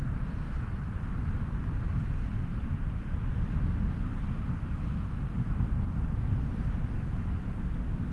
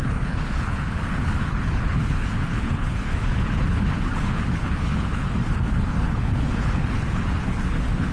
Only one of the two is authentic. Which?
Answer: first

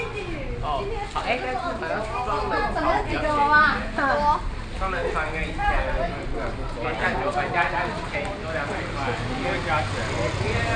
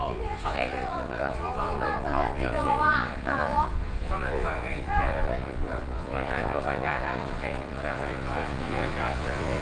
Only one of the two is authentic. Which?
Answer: first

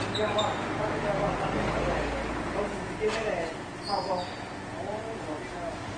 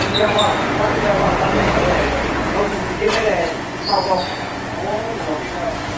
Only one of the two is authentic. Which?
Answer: first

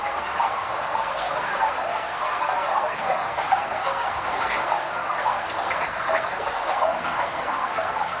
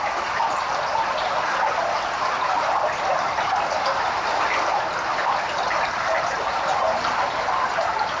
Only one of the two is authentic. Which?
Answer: second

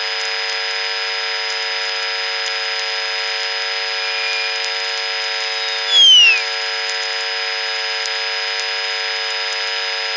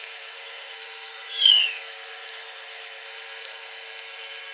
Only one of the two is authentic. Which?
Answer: first